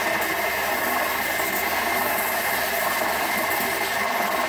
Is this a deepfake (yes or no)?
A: no